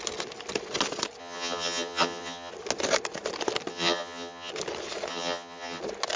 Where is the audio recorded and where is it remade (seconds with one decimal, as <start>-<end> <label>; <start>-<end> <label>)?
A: 0.0-1.2 recorded; 1.2-2.5 remade; 2.5-3.7 recorded; 3.7-4.5 remade; 4.5-5.1 recorded; 5.1-5.8 remade; 5.8-6.2 recorded